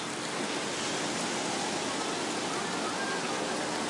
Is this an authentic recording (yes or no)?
yes